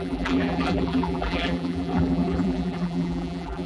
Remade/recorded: remade